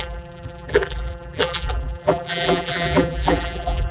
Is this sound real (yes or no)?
no